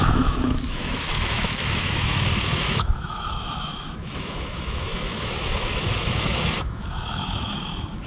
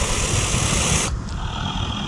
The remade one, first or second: first